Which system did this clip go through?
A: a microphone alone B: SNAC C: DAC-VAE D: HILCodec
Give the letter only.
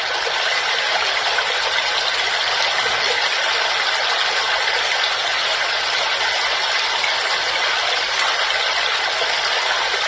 A